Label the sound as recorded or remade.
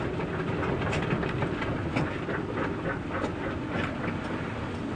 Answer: recorded